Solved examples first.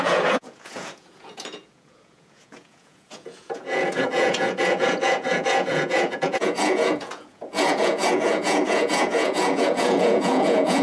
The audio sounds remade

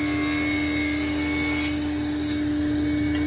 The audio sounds recorded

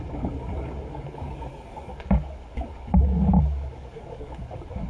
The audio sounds remade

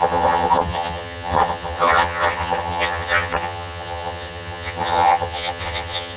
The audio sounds remade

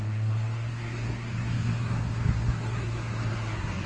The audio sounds remade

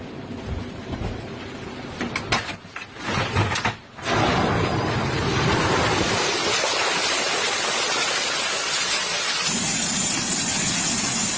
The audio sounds recorded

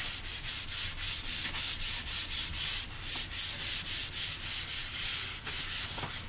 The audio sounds recorded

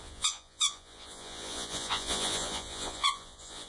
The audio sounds remade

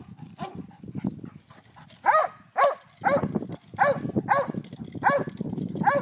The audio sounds recorded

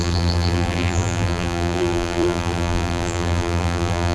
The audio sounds remade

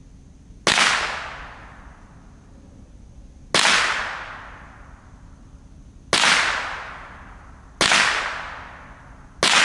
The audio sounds recorded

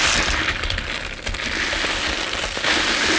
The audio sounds recorded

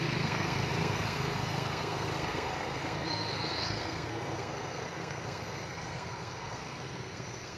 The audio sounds remade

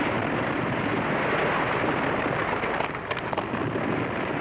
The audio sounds recorded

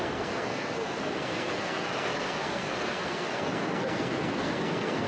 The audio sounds remade